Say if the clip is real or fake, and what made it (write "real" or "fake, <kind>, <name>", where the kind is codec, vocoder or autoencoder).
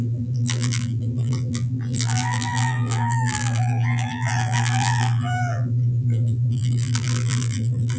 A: fake, vocoder, BigVGAN v2